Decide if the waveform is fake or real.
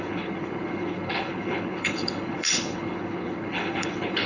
fake